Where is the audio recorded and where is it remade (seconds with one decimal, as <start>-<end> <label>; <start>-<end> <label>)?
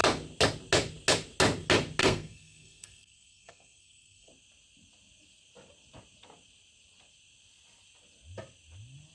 0.0-2.0 recorded; 2.0-4.3 remade; 4.3-9.1 recorded